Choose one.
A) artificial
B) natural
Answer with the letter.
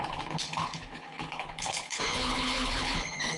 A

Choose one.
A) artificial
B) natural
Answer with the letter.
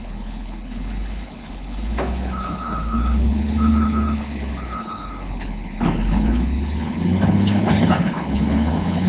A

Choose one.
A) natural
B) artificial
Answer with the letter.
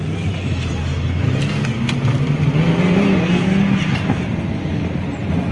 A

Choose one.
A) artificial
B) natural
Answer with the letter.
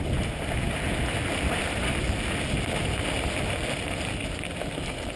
B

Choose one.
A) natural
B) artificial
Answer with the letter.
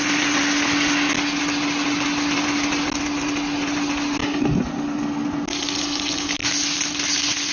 A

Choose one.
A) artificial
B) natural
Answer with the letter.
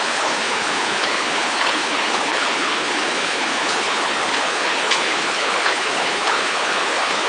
A